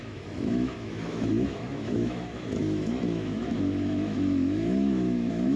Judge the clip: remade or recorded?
remade